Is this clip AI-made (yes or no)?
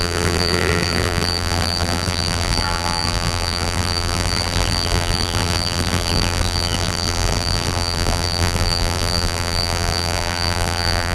yes